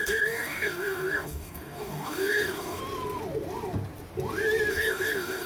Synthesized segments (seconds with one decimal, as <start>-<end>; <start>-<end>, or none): 0.0-2.8; 4.7-5.5